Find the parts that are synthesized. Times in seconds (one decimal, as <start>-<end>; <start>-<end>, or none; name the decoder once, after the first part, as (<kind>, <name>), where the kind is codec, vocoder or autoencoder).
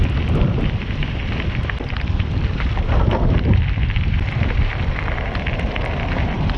0.0-6.6 (vocoder, BigVGAN v2)